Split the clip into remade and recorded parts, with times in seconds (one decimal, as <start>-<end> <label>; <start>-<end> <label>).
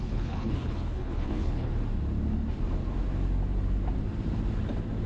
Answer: 0.0-1.7 remade; 1.7-5.1 recorded